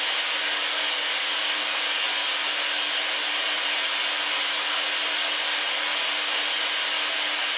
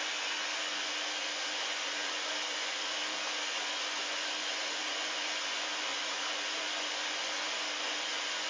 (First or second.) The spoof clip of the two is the second